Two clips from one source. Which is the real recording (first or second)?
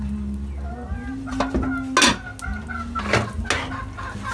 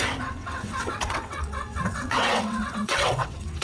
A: first